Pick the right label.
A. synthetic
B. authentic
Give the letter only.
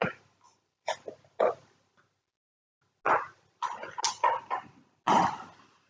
B